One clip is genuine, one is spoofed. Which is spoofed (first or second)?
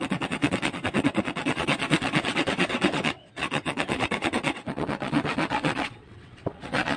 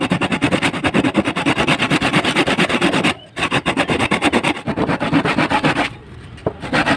first